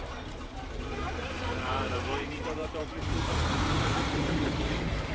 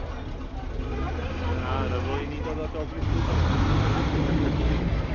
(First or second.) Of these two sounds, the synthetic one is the first